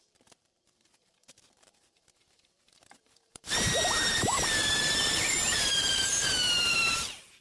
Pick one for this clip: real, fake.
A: fake